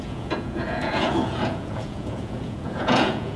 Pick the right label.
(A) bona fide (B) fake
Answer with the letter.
B